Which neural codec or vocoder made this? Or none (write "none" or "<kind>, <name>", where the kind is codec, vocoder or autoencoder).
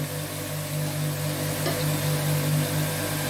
none